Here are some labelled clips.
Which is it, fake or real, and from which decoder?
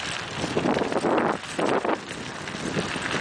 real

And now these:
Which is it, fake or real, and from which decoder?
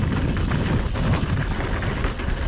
real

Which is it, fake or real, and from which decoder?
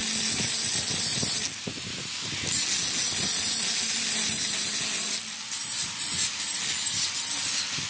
real